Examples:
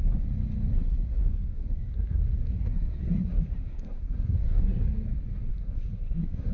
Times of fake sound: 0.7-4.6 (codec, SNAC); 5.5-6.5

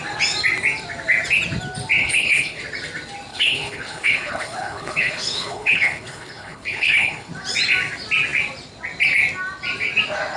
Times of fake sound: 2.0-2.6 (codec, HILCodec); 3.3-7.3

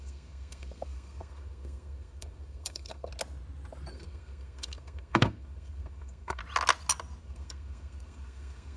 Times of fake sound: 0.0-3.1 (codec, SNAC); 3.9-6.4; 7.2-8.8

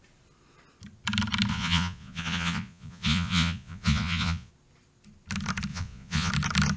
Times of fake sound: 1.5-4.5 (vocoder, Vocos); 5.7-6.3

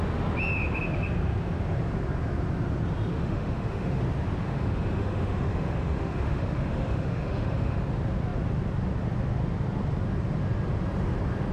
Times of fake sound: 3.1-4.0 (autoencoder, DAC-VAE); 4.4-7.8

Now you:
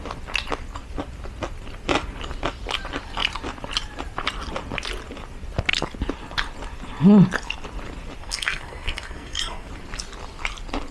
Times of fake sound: 8.2-9.7 (codec, SNAC)

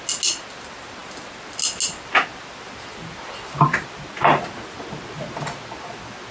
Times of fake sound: none